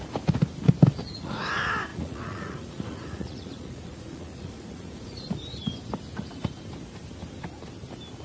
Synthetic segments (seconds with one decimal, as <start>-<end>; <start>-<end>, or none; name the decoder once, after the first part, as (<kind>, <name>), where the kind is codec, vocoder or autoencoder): 1.0-1.5 (vocoder, Vocos); 1.9-5.3